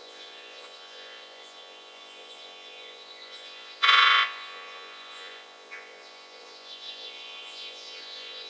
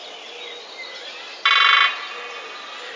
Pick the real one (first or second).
second